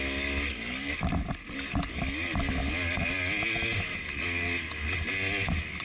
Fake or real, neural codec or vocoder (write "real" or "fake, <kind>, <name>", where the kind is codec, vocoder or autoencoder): real